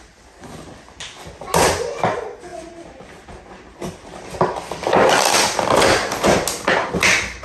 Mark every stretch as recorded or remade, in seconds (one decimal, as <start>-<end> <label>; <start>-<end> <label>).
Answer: 0.0-7.4 recorded